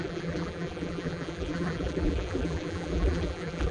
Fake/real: fake